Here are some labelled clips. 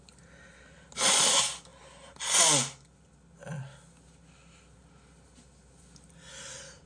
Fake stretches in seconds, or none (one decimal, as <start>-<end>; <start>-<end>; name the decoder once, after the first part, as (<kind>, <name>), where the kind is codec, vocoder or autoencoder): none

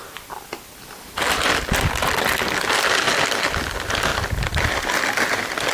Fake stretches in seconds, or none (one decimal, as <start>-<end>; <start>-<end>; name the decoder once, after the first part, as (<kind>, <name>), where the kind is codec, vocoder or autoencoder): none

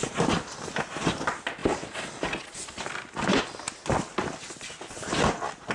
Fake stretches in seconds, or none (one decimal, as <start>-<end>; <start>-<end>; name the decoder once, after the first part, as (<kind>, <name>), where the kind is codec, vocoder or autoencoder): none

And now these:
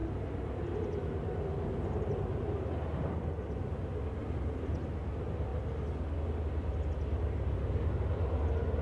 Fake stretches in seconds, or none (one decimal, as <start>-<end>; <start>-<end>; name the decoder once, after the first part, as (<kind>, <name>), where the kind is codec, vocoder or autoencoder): 4.2-4.8 (vocoder, BigVGAN v2)

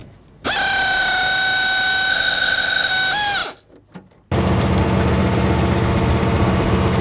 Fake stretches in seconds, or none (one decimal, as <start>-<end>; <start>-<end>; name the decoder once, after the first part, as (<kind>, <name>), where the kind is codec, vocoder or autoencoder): 2.1-2.9 (codec, ZipCodec)

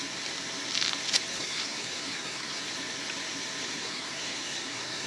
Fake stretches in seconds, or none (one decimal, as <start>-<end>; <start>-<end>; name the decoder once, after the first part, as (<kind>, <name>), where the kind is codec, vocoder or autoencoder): 1.3-2.6 (codec, SNAC); 3.7-5.1

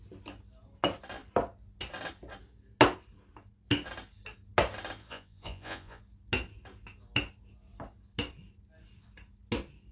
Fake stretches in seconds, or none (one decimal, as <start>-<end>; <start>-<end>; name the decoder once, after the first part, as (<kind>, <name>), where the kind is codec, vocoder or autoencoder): 5.0-6.0 (vocoder, Vocos)

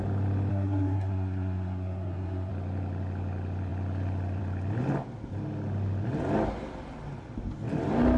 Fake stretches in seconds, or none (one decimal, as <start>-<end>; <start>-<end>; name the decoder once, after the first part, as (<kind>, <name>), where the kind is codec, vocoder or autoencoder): 0.5-2.5 (codec, SNAC)